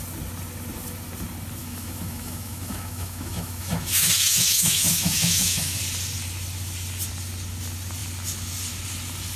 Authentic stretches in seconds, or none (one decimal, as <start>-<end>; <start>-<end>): 0.0-1.6; 5.8-9.4